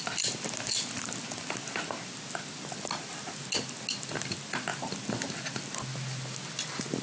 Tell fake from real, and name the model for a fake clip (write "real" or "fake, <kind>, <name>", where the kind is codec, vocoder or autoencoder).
real